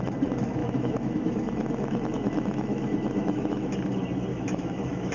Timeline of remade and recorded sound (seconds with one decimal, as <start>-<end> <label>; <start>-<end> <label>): 0.0-0.6 recorded; 0.6-3.7 remade; 3.7-4.3 recorded; 4.3-5.1 remade